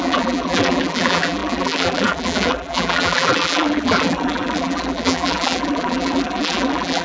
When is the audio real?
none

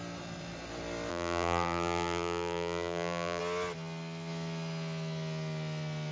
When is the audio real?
0.0-1.1; 3.4-6.1